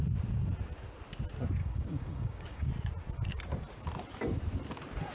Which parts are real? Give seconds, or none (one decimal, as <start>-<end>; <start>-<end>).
0.0-1.6; 2.7-5.1